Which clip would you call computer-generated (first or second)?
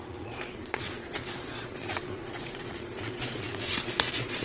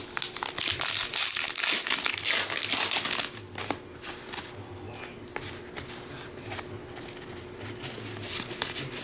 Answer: first